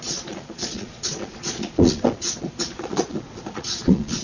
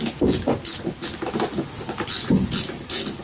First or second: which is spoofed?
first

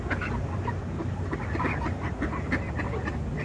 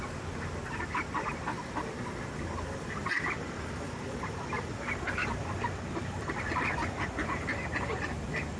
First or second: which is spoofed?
second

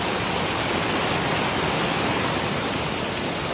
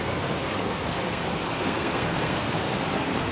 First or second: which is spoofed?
second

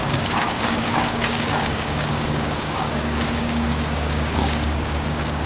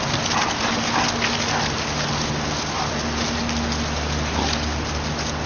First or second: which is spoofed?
first